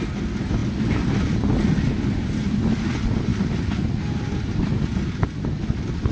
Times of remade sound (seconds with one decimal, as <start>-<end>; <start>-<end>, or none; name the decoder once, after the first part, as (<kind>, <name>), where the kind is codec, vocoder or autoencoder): none